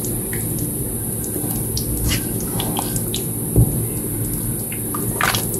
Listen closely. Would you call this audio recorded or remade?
recorded